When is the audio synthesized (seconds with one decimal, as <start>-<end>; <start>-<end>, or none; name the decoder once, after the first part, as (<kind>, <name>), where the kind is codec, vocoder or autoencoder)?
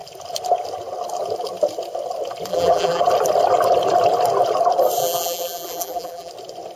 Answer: 2.5-3.0 (vocoder, BigVGAN v2); 5.0-6.3